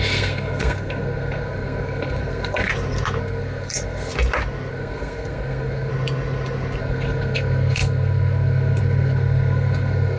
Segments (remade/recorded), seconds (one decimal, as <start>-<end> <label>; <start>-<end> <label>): 0.0-2.7 remade; 2.7-3.2 recorded; 3.2-4.1 remade; 4.1-4.7 recorded; 4.7-5.9 remade; 5.9-6.8 recorded; 6.8-10.2 remade